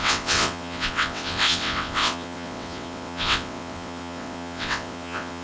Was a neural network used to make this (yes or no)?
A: yes